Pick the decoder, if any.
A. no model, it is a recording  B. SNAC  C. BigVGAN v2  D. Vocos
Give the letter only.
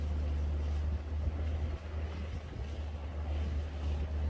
A